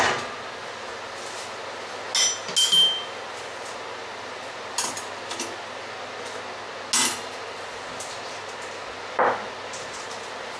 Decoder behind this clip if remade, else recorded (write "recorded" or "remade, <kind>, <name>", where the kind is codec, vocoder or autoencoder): recorded